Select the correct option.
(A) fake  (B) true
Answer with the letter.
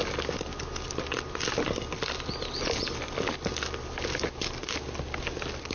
B